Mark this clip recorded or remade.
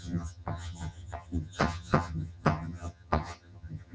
remade